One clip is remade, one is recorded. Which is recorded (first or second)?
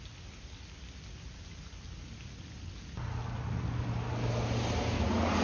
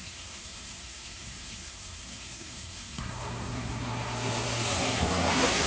first